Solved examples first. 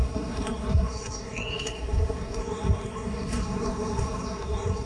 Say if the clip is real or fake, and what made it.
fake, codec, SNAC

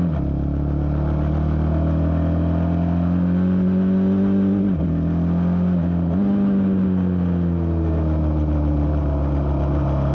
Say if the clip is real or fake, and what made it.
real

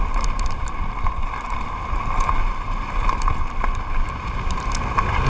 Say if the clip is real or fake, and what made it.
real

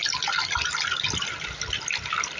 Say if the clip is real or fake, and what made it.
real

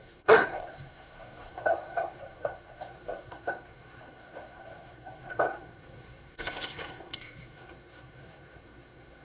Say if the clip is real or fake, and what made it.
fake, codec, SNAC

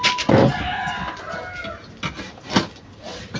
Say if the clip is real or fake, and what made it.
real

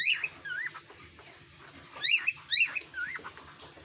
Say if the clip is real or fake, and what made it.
real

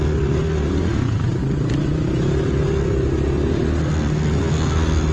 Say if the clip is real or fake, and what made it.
real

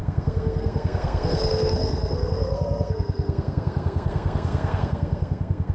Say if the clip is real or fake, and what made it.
fake, codec, SNAC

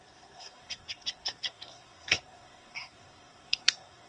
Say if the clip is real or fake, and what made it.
fake, codec, SNAC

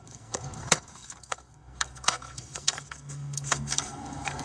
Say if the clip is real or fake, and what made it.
fake, codec, SNAC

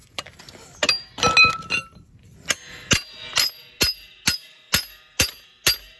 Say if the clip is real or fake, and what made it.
real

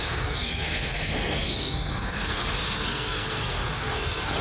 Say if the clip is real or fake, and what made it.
fake, codec, SNAC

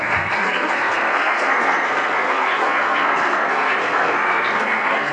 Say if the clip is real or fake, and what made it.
fake, codec, SNAC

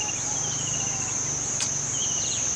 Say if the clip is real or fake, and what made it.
real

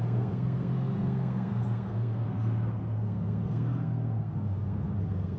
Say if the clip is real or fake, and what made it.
fake, codec, SNAC